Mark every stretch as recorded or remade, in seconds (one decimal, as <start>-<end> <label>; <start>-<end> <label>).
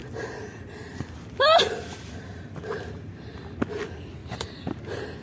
0.0-4.2 recorded; 4.2-4.8 remade; 4.8-5.2 recorded